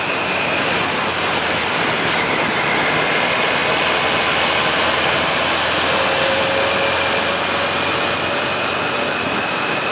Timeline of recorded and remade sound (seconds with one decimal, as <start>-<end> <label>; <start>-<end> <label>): 0.0-9.9 recorded